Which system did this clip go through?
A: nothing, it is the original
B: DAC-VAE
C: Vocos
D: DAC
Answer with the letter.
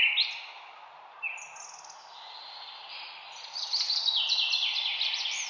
A